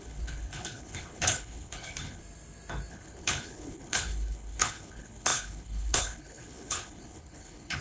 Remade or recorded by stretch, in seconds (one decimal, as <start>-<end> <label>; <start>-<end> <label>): 0.0-2.2 remade; 2.2-2.9 recorded; 2.9-7.8 remade